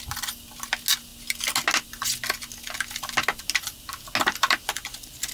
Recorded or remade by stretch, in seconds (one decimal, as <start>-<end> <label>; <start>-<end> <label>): 0.0-5.3 recorded